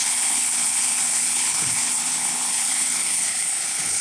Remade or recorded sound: remade